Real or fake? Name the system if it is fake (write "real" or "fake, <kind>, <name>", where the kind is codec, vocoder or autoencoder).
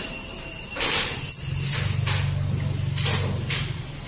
real